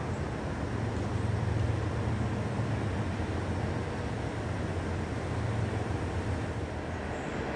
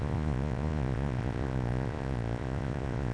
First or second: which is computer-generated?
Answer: second